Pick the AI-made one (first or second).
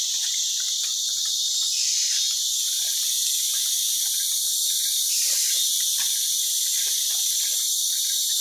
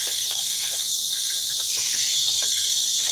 second